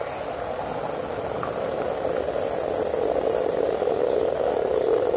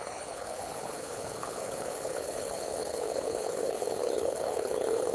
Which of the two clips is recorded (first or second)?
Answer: first